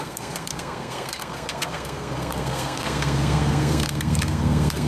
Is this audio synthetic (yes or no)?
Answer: yes